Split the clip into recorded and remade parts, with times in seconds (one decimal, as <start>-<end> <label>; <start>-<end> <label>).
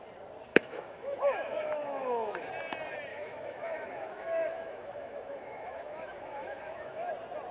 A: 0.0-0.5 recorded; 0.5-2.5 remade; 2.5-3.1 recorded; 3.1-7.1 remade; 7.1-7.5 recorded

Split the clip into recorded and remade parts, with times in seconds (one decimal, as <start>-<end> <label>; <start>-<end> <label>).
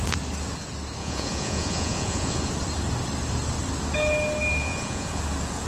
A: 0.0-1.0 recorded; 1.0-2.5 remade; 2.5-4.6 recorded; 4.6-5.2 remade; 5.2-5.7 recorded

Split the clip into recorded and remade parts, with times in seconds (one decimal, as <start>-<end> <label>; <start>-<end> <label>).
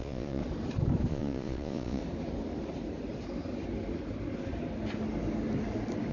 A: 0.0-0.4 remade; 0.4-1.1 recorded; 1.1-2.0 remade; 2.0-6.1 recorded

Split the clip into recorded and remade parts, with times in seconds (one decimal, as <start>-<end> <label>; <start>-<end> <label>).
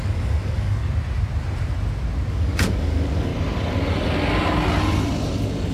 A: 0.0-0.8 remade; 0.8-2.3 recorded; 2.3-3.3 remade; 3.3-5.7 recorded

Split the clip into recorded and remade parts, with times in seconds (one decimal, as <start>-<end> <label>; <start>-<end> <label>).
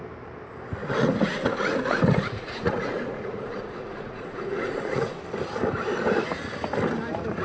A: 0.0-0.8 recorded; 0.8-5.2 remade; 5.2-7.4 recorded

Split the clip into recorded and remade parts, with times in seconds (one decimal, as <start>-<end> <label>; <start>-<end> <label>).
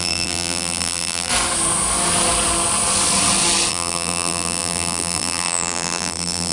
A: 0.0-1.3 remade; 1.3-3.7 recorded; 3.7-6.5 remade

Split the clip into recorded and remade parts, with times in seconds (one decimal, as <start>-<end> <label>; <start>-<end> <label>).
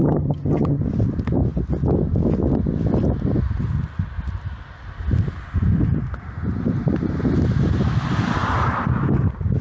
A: 0.0-0.8 remade; 0.8-9.6 recorded